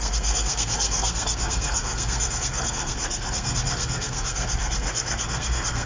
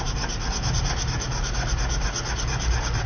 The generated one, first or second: first